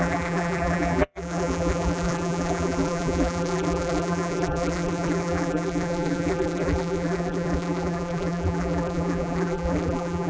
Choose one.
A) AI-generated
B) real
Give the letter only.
A